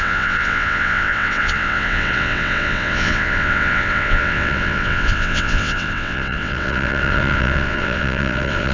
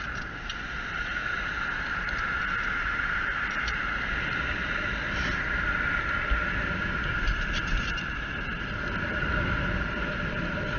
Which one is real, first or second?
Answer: second